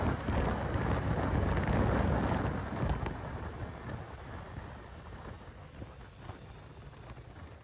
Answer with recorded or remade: recorded